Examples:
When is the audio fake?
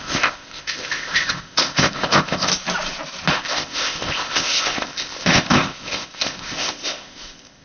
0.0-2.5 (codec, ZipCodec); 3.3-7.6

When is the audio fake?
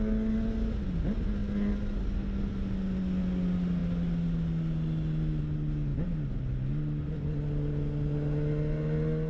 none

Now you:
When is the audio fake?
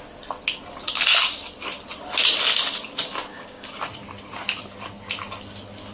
3.3-3.8 (codec, DAC)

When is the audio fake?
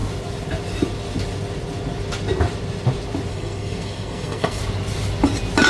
3.3-4.6 (codec, SNAC)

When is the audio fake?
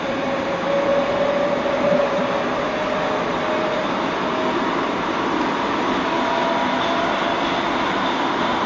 none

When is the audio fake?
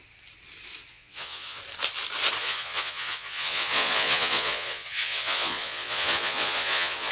0.9-1.6 (vocoder, Vocos); 2.4-7.1